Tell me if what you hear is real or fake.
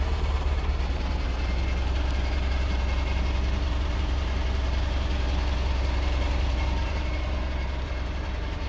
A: fake